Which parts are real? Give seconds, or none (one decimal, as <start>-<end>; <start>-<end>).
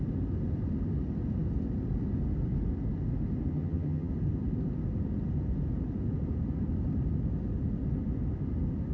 0.0-3.5; 4.1-8.9